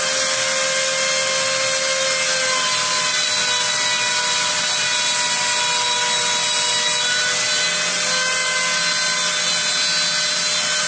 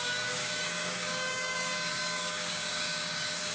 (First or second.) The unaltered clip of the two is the first